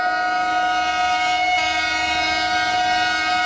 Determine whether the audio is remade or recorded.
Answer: recorded